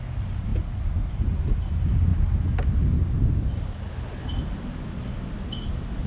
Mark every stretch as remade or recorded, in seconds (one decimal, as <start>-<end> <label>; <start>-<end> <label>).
0.0-6.1 recorded